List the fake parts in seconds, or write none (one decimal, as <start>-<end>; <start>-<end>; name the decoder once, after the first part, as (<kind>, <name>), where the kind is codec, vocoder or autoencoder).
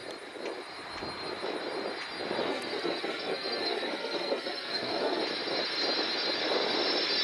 2.4-5.2 (codec, SNAC)